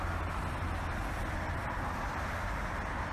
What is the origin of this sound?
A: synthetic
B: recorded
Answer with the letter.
B